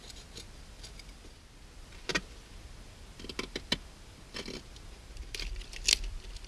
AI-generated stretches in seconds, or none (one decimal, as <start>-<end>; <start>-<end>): none